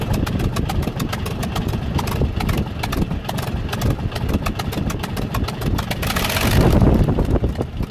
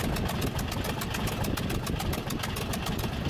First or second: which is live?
second